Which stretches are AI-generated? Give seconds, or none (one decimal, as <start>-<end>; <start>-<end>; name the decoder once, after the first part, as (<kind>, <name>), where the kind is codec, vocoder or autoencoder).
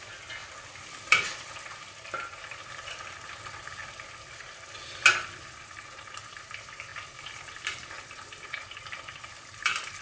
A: 0.0-3.8 (vocoder, BigVGAN v2); 6.5-10.0